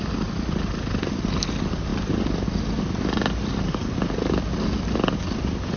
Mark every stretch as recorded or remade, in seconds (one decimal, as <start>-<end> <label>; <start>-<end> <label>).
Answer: 0.0-5.8 recorded